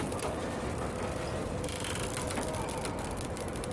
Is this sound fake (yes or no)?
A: no